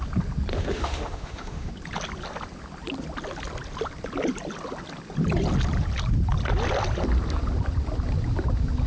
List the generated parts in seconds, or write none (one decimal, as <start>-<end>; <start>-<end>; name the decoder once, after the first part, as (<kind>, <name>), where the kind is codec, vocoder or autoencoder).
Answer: 0.5-1.7 (autoencoder, DAC-VAE)